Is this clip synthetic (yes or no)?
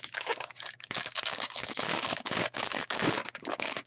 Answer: yes